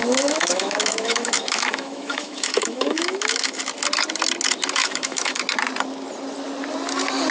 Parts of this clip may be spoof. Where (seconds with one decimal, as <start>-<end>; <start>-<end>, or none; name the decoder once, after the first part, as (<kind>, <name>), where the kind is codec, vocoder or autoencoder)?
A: 0.0-3.6 (autoencoder, DAC-VAE); 4.8-5.4